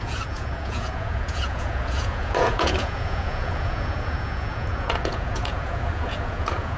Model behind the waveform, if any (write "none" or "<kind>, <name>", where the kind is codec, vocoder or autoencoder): vocoder, Vocos